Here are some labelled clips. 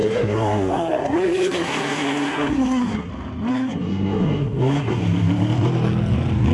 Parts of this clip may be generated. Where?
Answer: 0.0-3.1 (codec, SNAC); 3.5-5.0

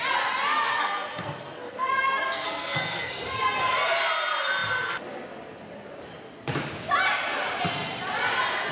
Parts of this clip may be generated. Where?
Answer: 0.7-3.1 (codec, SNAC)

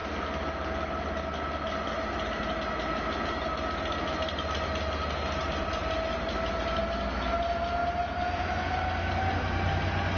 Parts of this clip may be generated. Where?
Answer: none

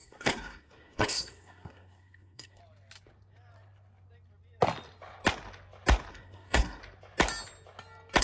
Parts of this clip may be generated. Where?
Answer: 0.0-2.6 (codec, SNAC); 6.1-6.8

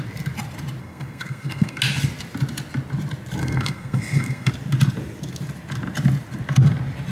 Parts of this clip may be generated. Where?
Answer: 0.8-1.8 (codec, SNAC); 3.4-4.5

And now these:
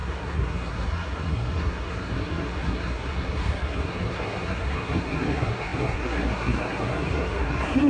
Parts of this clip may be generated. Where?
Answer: 0.0-7.9 (codec, SNAC)